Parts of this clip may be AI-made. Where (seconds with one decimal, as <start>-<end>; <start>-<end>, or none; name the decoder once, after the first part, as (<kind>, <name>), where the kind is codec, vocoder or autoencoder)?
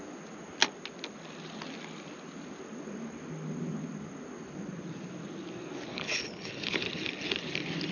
5.9-6.8 (codec, HILCodec)